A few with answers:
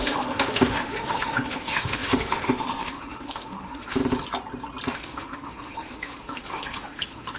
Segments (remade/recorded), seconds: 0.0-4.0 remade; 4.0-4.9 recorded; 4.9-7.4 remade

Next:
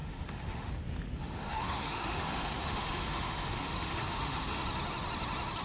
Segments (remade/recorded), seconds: 0.0-0.7 remade; 0.7-1.2 recorded; 1.2-4.6 remade; 4.6-5.6 recorded